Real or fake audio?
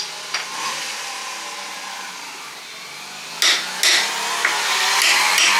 real